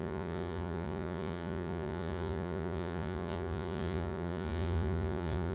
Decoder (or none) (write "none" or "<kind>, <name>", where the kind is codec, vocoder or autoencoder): vocoder, Vocos